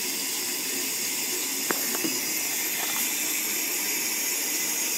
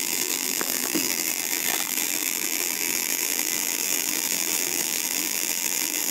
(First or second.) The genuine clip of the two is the first